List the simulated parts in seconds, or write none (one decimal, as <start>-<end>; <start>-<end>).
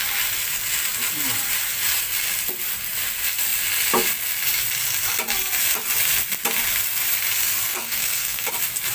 7.7-8.5